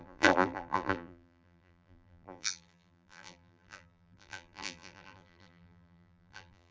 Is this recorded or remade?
remade